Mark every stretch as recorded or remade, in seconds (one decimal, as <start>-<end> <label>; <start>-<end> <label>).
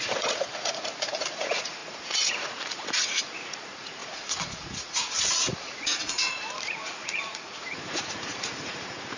0.0-9.2 remade